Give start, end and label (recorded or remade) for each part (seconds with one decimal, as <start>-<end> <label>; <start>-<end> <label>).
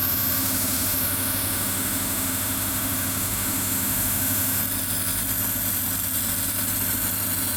0.0-4.6 remade; 4.6-7.6 recorded